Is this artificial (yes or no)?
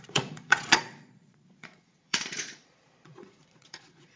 yes